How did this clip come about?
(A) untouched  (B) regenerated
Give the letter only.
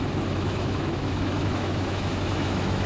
B